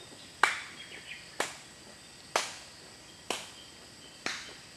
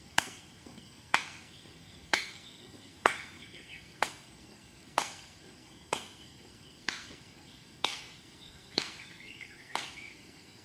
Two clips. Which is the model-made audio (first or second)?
second